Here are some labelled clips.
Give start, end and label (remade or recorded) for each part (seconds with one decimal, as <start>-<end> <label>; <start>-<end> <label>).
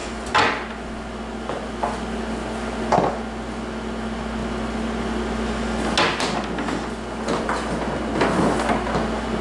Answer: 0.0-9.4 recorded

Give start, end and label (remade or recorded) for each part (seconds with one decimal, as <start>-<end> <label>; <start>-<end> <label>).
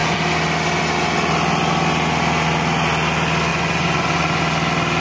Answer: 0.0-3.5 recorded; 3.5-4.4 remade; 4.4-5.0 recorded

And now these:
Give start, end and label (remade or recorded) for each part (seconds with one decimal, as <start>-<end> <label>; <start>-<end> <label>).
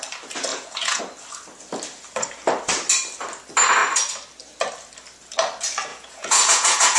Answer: 0.0-0.5 recorded; 0.5-1.0 remade; 1.0-5.9 recorded; 5.9-7.0 remade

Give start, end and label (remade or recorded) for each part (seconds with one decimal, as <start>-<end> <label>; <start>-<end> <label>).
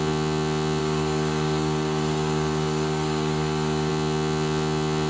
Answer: 0.0-0.8 recorded; 0.8-3.9 remade; 3.9-5.1 recorded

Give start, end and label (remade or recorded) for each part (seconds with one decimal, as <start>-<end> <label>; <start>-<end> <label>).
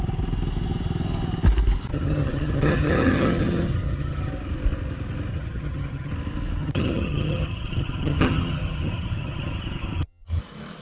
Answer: 0.0-1.9 recorded; 1.9-4.3 remade; 4.3-5.3 recorded; 5.3-6.1 remade; 6.1-6.6 recorded; 6.6-10.4 remade; 10.4-10.8 recorded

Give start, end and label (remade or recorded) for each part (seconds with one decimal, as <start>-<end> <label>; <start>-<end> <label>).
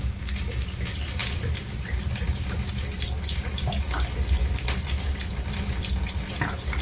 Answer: 0.0-6.8 recorded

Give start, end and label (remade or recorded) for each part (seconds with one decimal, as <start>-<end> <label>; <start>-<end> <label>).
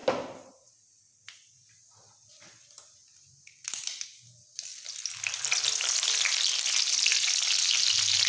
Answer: 0.0-8.3 recorded